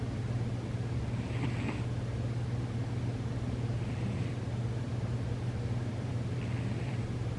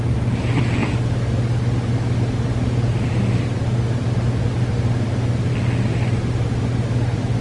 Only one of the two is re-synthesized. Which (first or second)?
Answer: first